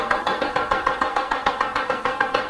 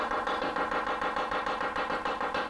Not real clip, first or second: first